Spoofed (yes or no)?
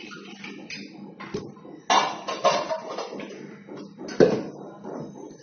no